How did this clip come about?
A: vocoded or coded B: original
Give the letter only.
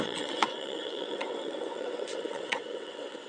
A